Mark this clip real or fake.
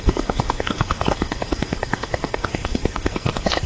fake